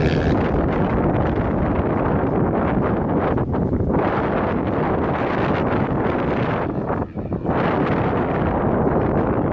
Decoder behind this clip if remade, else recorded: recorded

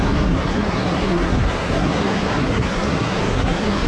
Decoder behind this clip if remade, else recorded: remade, codec, SNAC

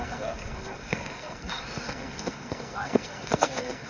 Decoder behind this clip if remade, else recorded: remade, codec, SNAC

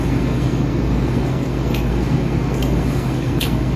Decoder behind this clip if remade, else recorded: remade, codec, SNAC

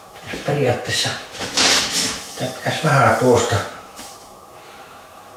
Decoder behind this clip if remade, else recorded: remade, autoencoder, DAC-VAE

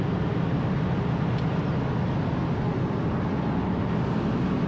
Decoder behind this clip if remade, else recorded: recorded